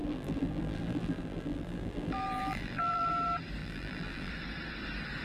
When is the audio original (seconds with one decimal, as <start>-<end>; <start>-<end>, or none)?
3.1-3.6; 4.3-5.2

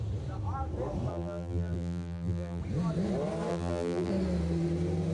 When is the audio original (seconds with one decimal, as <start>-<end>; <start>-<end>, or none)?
0.0-1.1; 2.6-3.5; 4.1-5.1

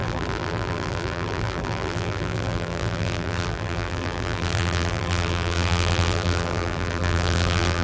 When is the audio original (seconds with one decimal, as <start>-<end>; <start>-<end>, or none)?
none

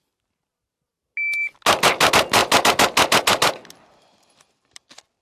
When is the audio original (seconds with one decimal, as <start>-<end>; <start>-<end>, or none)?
0.0-5.2

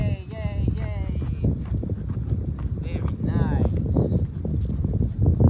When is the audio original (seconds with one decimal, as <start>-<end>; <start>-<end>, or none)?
0.0-5.5